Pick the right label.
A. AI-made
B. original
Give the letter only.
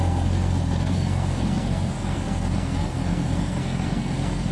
A